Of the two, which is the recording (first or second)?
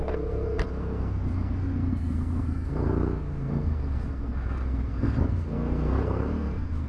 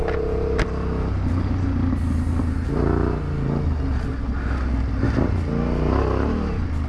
second